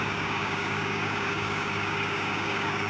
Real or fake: fake